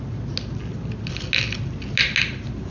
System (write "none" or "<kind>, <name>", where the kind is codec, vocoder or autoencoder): none